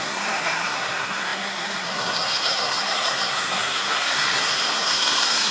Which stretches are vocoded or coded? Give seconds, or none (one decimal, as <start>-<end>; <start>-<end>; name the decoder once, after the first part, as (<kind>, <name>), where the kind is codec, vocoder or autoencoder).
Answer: 0.0-5.5 (codec, SNAC)